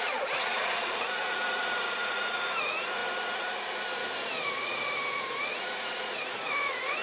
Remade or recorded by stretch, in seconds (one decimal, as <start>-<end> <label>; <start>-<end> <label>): 0.0-3.0 remade; 3.0-4.4 recorded; 4.4-7.0 remade